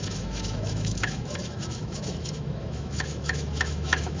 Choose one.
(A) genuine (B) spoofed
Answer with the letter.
B